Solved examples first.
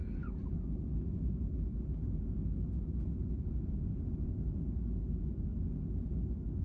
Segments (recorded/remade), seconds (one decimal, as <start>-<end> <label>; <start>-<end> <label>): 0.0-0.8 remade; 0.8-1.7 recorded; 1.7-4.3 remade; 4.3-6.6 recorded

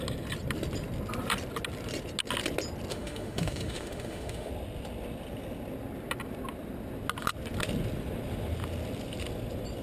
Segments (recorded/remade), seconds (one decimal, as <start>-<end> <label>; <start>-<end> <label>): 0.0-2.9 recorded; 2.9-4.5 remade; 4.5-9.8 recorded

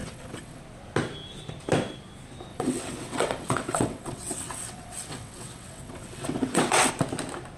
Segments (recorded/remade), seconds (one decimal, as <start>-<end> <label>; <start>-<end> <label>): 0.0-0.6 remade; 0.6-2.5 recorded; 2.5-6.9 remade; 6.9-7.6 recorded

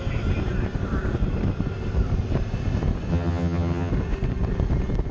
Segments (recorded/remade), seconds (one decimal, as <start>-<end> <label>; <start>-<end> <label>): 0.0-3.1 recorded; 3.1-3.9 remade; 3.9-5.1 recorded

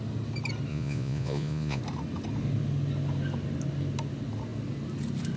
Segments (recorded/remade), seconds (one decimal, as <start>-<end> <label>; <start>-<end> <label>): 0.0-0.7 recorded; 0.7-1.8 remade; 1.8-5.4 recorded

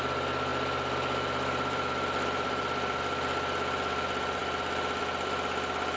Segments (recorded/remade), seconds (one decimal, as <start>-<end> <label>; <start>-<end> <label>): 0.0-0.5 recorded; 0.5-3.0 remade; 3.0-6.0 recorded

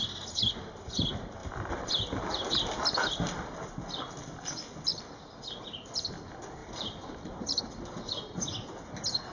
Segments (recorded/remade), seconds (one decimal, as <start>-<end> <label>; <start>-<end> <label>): 0.0-6.6 recorded; 6.6-7.6 remade; 7.6-9.3 recorded